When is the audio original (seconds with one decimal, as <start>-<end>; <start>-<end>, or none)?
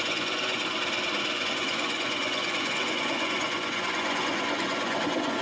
0.6-1.4